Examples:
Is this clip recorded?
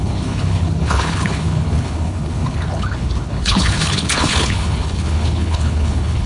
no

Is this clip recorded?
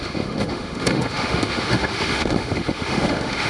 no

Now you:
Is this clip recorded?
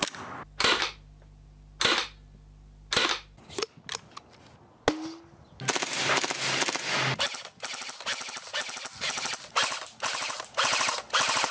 yes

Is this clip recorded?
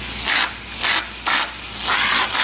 yes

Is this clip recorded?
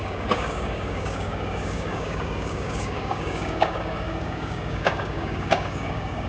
no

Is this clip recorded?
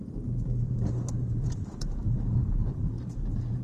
no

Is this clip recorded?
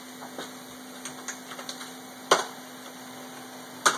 yes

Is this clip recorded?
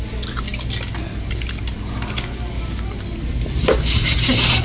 yes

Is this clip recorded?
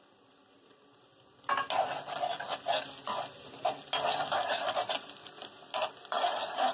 yes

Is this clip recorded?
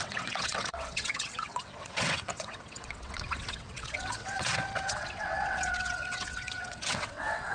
no